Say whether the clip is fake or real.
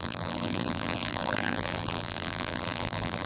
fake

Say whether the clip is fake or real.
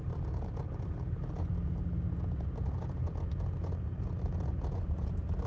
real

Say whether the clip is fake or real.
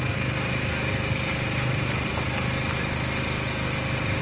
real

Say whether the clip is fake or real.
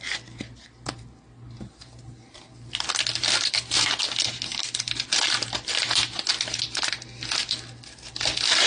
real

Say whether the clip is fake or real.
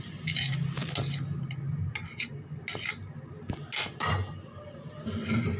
real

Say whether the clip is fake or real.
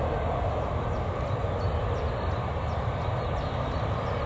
real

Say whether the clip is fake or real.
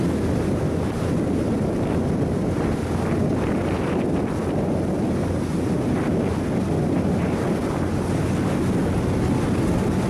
real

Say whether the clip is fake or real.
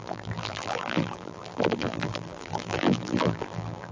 fake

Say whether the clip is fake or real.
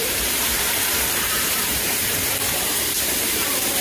fake